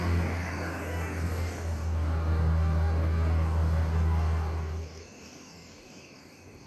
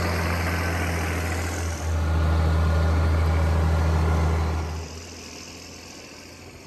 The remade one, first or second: first